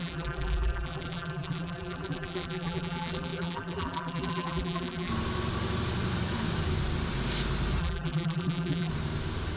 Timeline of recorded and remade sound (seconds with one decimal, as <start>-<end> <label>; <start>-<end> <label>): 0.0-5.1 remade; 5.1-7.8 recorded; 7.8-8.9 remade; 8.9-9.6 recorded